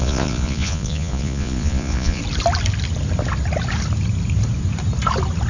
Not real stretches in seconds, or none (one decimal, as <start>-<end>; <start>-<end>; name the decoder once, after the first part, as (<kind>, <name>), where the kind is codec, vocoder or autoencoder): 0.0-2.2 (vocoder, Vocos)